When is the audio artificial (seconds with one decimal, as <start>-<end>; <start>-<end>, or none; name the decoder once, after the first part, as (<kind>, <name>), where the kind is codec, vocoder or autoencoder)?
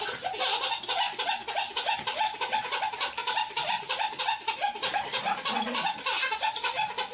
3.2-4.2 (vocoder, BigVGAN v2)